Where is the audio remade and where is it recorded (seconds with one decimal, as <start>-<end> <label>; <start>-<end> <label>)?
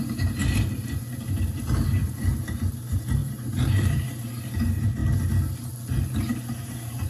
0.0-5.0 remade; 5.0-6.3 recorded; 6.3-7.1 remade